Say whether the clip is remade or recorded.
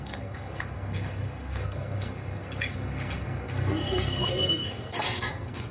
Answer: remade